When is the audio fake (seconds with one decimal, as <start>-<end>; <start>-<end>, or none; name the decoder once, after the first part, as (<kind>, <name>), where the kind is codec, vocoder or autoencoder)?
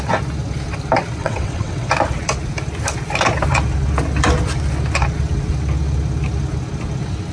1.2-1.9 (vocoder, WaveNeXt)